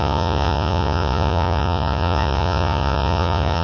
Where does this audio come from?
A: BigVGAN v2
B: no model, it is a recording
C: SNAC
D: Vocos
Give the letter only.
D